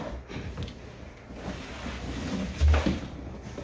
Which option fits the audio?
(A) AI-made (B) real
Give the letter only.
B